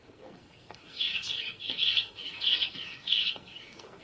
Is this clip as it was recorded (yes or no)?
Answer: no